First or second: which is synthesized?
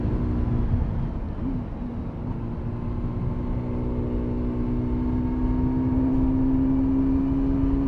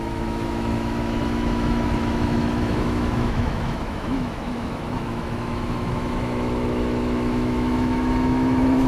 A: second